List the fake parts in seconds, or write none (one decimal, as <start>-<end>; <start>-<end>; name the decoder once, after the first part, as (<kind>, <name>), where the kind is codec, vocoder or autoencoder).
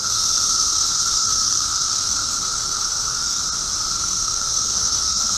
0.0-3.4 (codec, SNAC); 3.9-5.4